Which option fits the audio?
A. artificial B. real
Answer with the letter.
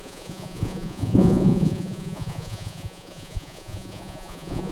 A